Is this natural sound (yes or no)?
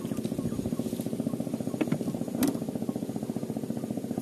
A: yes